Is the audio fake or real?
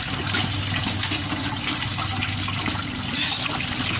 real